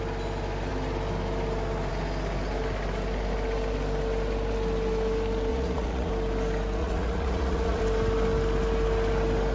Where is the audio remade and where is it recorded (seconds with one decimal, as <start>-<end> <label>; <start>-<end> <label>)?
0.0-5.5 recorded; 5.5-6.1 remade; 6.1-6.8 recorded; 6.8-7.8 remade; 7.8-9.5 recorded